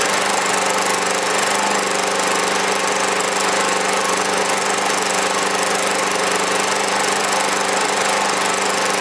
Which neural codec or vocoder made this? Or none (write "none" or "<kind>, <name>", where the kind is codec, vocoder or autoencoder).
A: none